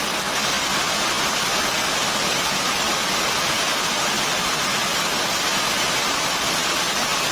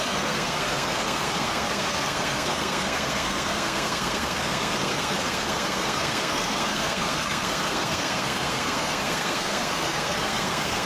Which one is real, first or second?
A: first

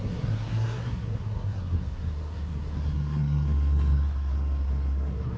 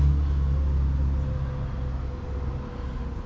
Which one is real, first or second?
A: second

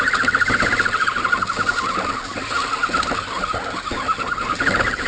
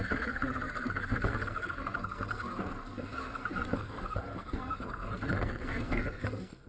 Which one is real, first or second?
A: first